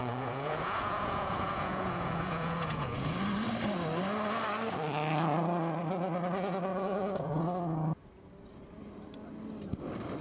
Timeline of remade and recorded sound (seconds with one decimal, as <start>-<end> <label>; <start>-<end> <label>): 0.0-3.1 remade; 3.1-6.7 recorded; 6.7-7.4 remade; 7.4-10.2 recorded